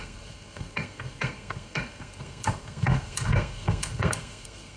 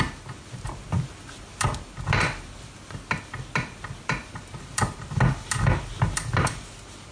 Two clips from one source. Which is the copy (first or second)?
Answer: first